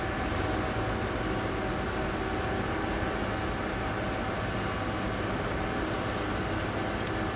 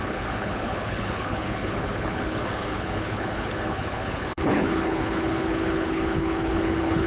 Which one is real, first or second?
first